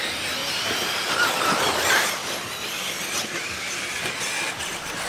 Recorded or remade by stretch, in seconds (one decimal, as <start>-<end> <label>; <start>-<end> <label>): 0.0-5.1 recorded